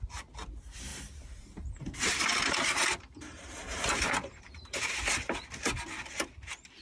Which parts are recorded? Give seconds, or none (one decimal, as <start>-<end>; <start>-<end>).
0.0-0.9; 5.0-6.8